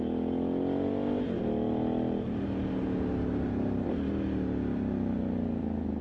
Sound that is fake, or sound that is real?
real